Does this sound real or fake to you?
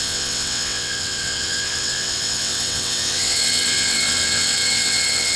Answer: fake